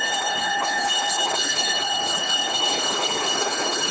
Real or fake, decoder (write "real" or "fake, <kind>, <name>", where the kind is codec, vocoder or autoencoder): fake, codec, HILCodec